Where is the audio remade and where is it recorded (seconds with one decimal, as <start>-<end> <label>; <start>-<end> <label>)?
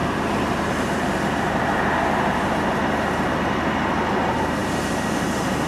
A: 0.0-5.7 recorded